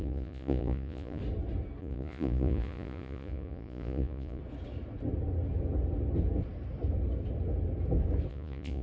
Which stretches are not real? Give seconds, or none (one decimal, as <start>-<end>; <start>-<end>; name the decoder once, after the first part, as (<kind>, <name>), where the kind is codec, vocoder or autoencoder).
0.0-1.2 (vocoder, Vocos); 1.8-4.4; 8.3-8.8